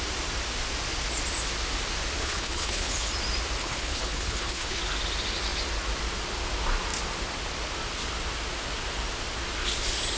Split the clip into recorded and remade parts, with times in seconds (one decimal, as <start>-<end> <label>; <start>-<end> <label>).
0.0-2.2 recorded; 2.2-3.1 remade; 3.1-3.6 recorded; 3.6-4.8 remade; 4.8-10.2 recorded